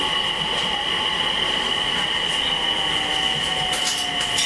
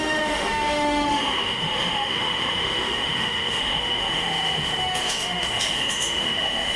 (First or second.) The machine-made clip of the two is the second